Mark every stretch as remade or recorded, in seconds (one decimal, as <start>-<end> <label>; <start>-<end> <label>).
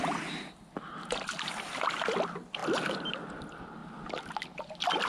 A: 0.0-5.1 recorded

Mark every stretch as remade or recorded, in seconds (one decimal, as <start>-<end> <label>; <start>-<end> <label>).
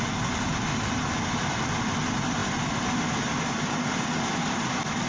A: 0.0-0.7 remade; 0.7-1.4 recorded; 1.4-5.1 remade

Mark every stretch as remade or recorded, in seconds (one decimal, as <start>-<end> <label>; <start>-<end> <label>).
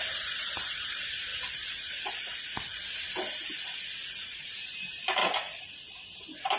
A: 0.0-1.3 remade; 1.3-4.2 recorded; 4.2-5.2 remade; 5.2-6.1 recorded; 6.1-6.6 remade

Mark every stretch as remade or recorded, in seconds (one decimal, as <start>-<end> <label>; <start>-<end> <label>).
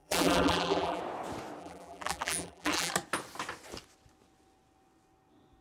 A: 0.0-1.0 remade; 1.0-1.6 recorded; 1.6-2.9 remade; 2.9-5.6 recorded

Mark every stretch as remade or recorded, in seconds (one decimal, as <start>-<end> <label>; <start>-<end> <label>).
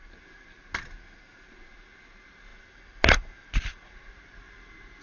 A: 0.0-2.5 recorded; 2.5-4.0 remade; 4.0-5.0 recorded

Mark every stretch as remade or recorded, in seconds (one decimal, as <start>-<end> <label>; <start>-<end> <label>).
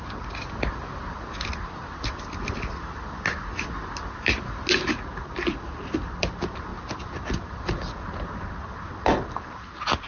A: 0.0-10.1 recorded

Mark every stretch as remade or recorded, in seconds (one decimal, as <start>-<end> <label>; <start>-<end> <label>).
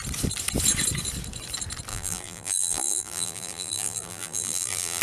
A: 0.0-1.9 recorded; 1.9-5.0 remade